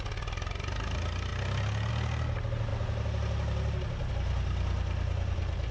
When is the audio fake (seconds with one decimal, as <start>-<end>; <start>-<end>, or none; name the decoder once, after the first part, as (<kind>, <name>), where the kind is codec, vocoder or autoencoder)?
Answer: none